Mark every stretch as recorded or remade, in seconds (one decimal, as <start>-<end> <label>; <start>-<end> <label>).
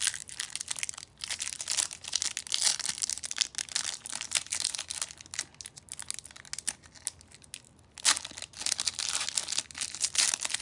0.0-10.6 recorded